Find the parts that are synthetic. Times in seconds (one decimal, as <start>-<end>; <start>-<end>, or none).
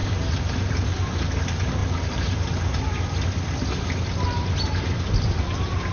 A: 0.0-0.7; 1.8-2.5